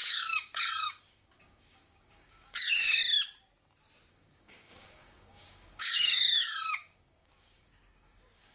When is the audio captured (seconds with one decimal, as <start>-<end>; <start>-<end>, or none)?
3.0-4.1